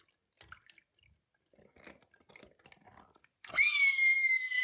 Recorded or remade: recorded